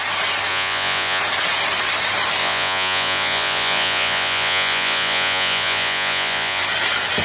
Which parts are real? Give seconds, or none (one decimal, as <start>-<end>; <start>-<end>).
0.0-0.5; 1.2-2.4; 6.6-7.2